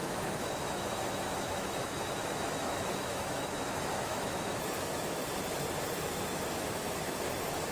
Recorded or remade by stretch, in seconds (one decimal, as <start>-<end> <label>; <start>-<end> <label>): 0.0-5.2 remade; 5.2-6.4 recorded; 6.4-7.7 remade